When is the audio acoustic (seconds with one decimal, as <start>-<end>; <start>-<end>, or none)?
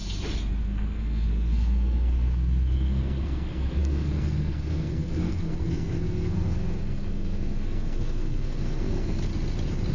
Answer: 0.0-0.6; 9.3-9.9